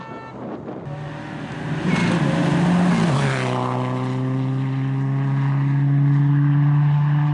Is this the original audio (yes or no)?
yes